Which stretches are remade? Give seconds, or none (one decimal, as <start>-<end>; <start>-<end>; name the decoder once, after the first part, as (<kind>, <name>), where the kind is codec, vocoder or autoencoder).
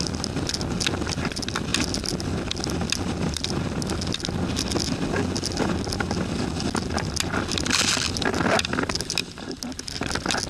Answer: none